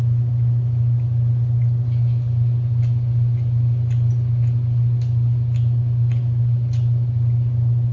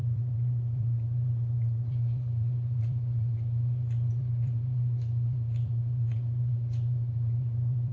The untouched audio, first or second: first